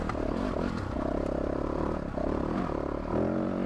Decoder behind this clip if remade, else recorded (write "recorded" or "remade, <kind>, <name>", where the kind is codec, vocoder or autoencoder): recorded